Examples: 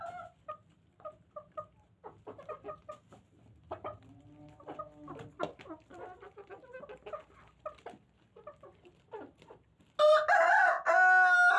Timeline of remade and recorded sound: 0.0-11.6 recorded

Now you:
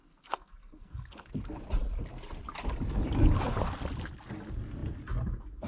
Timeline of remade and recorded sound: 0.0-1.3 remade; 1.3-5.7 recorded

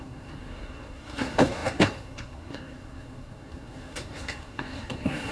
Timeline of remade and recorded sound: 0.0-5.3 remade

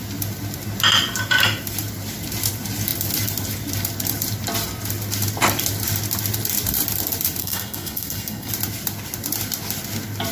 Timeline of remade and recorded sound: 0.0-7.4 recorded; 7.4-8.5 remade; 8.5-10.3 recorded

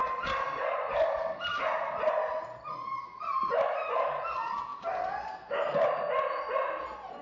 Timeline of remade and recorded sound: 0.0-7.2 recorded

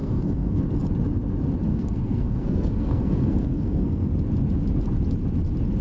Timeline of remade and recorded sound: 0.0-0.6 remade; 0.6-1.7 recorded; 1.7-4.1 remade; 4.1-5.8 recorded

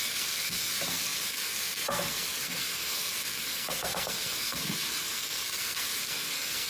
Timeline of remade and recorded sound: 0.0-6.7 remade

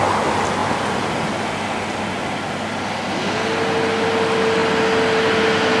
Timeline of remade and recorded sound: 0.0-5.8 recorded